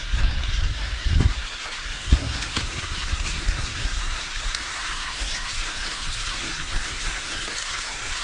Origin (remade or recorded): remade